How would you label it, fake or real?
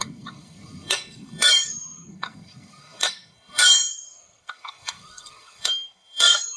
fake